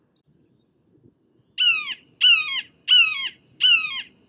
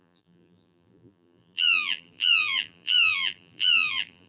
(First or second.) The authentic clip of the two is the first